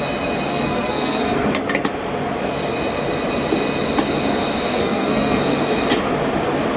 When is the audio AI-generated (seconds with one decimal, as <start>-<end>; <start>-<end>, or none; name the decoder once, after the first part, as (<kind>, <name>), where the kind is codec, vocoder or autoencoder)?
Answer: 0.5-1.5 (codec, SNAC); 4.7-5.4